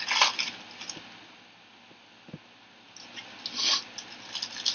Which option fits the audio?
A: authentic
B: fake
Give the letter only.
A